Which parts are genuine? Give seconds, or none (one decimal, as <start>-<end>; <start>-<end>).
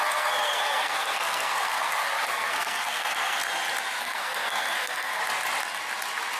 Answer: 3.4-4.0; 5.2-6.4